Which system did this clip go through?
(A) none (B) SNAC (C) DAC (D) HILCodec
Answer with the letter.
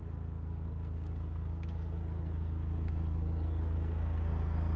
B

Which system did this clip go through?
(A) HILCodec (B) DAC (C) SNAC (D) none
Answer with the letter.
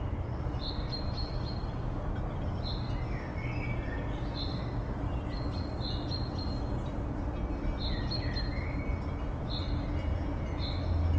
D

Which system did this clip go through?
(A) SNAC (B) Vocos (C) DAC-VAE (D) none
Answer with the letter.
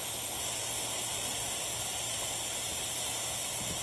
D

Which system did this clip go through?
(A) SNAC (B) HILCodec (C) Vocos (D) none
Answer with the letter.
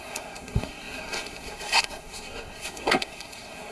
A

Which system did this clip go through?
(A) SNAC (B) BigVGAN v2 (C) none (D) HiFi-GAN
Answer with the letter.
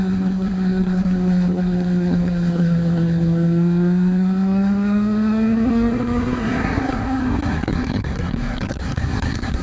A